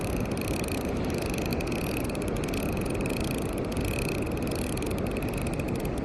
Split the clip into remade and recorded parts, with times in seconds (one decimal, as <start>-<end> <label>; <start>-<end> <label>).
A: 0.0-6.0 recorded